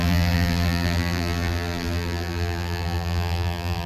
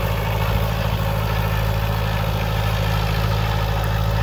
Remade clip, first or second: first